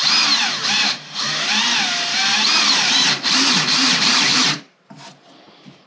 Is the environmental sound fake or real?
fake